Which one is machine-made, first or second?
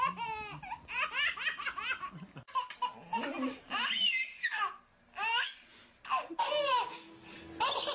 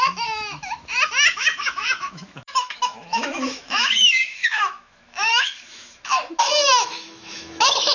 second